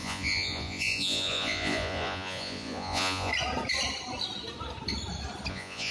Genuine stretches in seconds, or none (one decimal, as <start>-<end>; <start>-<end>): 3.3-5.5